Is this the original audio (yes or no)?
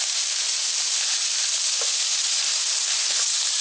yes